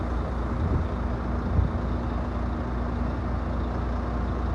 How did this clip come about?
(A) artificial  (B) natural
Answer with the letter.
B